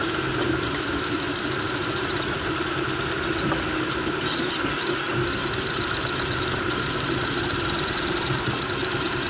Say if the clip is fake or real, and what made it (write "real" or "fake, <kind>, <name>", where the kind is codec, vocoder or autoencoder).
fake, vocoder, BigVGAN v2